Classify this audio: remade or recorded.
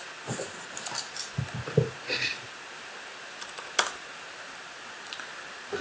recorded